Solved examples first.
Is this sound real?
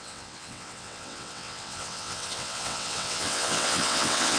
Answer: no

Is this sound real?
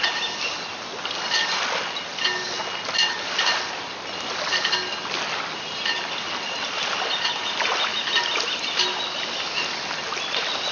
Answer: yes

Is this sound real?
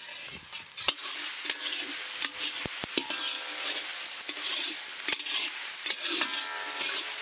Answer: yes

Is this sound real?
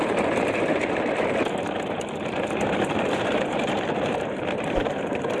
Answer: no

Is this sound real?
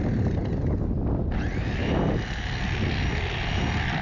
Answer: yes